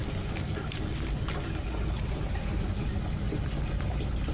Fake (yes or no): no